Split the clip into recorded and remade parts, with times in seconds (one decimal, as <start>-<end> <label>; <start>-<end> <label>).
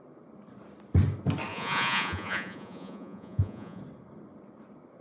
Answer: 0.0-1.5 recorded; 1.5-3.8 remade; 3.8-5.0 recorded